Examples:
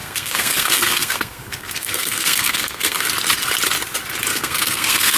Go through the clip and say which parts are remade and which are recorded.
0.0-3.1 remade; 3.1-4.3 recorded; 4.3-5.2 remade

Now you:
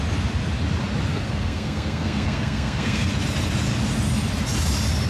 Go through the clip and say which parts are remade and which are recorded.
0.0-1.1 recorded; 1.1-3.1 remade; 3.1-5.1 recorded

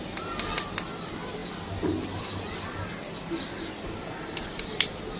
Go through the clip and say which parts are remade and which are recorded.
0.0-5.2 recorded